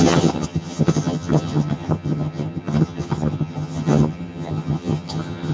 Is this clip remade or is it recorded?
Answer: remade